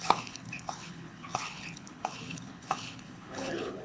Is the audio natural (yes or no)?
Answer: no